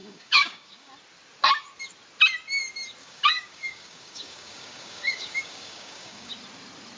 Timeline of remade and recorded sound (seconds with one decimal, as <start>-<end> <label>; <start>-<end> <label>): 0.0-0.9 remade; 0.9-3.0 recorded; 3.0-6.3 remade; 6.3-7.0 recorded